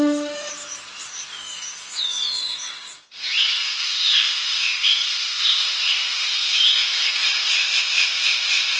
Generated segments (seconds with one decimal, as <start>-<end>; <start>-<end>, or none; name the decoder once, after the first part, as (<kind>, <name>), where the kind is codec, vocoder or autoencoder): 0.0-0.5 (autoencoder, DAC-VAE); 3.8-6.3; 7.5-8.8